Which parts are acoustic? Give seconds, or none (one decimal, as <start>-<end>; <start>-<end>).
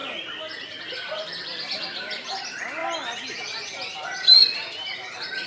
0.0-1.4; 2.8-3.3